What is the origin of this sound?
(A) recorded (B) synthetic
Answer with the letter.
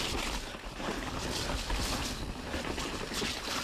A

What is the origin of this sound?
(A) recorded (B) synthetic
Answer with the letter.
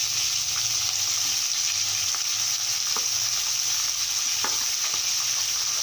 A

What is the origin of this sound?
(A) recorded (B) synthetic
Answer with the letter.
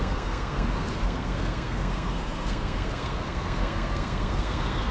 B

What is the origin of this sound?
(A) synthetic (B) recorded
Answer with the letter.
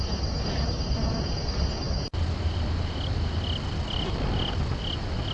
B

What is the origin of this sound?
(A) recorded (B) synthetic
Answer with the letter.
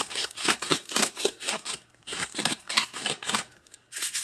B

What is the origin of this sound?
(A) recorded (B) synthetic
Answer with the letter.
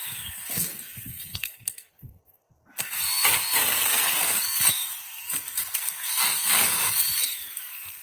B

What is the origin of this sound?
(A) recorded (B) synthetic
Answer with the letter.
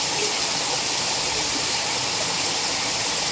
A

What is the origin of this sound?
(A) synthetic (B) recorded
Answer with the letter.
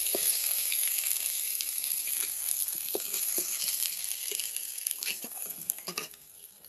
A